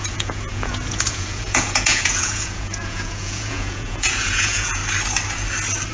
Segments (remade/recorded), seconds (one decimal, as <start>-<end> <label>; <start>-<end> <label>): 0.0-4.8 remade; 4.8-5.9 recorded